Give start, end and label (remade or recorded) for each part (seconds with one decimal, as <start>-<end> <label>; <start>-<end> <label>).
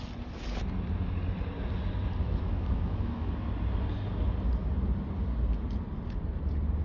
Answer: 0.0-2.2 recorded; 2.2-3.3 remade; 3.3-6.8 recorded